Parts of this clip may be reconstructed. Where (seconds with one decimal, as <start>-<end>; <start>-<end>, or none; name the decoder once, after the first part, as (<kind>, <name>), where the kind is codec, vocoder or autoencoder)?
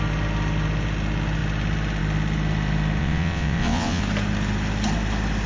3.0-4.0 (vocoder, WaveNeXt)